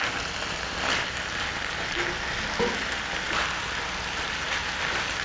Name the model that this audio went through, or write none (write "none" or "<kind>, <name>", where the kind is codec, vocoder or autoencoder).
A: none